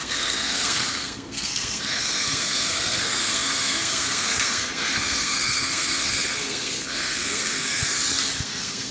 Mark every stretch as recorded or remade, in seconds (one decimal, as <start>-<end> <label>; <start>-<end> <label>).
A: 0.0-7.8 remade; 7.8-8.4 recorded; 8.4-8.9 remade